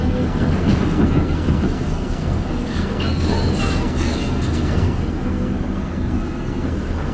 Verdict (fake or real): fake